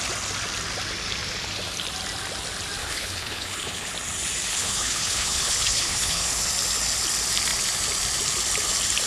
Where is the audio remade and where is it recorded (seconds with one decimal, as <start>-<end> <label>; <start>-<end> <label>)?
0.0-2.8 recorded; 2.8-3.9 remade; 3.9-4.5 recorded; 4.5-6.5 remade; 6.5-9.1 recorded